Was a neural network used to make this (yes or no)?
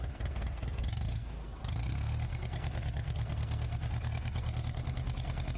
yes